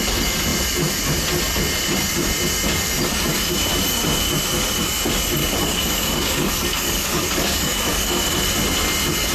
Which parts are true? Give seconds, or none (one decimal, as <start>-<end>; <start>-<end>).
0.0-5.4; 8.1-9.3